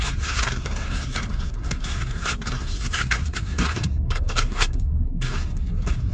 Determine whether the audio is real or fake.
fake